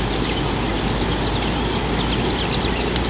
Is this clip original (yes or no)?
yes